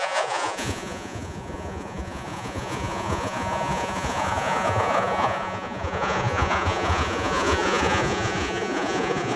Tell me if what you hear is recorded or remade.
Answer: remade